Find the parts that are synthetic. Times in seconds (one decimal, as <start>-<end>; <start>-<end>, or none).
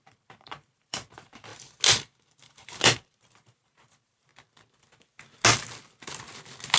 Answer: 0.0-1.5; 2.3-4.3